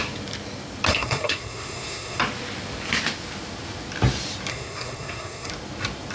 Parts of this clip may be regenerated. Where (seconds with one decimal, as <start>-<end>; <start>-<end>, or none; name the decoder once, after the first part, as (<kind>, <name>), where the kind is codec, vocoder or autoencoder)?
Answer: 0.9-2.2 (codec, SNAC); 4.5-5.5